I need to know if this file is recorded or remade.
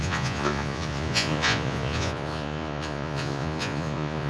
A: remade